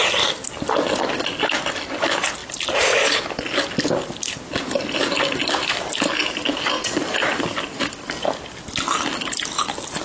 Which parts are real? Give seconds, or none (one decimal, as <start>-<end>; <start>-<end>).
0.0-10.0